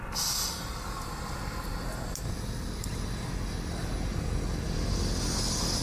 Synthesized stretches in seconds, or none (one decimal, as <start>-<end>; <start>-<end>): none